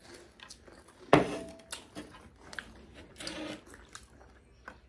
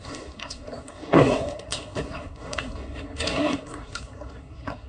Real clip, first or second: first